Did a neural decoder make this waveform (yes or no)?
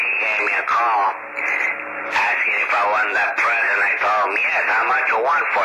no